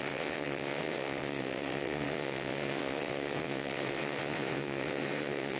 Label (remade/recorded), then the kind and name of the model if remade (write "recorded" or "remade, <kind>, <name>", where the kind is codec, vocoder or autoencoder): remade, vocoder, WaveNeXt